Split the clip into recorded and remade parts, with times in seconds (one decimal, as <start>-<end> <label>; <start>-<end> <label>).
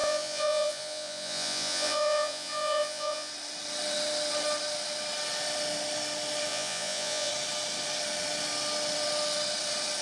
0.0-3.3 remade; 3.3-6.5 recorded; 6.5-7.3 remade; 7.3-10.0 recorded